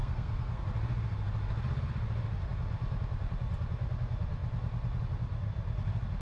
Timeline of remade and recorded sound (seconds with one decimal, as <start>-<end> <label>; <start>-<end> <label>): 0.0-0.6 remade; 0.6-6.2 recorded